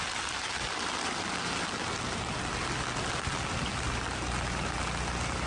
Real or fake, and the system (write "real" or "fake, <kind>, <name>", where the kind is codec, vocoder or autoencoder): real